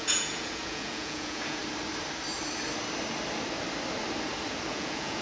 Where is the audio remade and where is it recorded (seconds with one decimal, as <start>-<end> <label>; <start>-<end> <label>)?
0.0-1.6 remade; 1.6-4.7 recorded; 4.7-5.2 remade